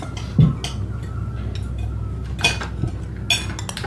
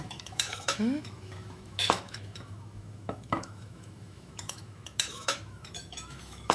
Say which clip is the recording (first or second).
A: first